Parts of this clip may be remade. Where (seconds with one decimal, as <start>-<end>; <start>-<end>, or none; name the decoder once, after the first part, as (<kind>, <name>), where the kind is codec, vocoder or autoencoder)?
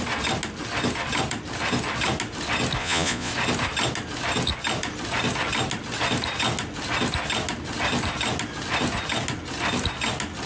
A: 2.8-3.3 (vocoder, Vocos)